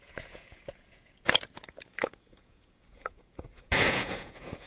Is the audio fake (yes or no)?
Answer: yes